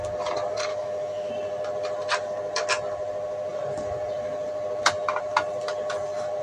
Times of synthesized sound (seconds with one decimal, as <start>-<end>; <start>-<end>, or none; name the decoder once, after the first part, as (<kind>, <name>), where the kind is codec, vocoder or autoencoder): 0.7-1.3 (autoencoder, DAC-VAE)